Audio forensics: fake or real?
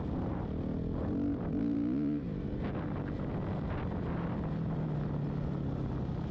real